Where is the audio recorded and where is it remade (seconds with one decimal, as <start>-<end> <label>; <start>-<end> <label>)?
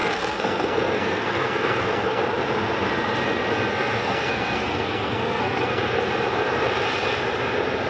0.0-2.2 remade; 2.2-3.7 recorded; 3.7-5.8 remade; 5.8-7.9 recorded